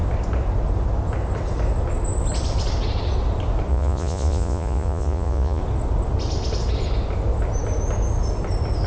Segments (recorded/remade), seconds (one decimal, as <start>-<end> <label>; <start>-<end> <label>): 0.0-3.7 recorded; 3.7-5.6 remade; 5.6-8.9 recorded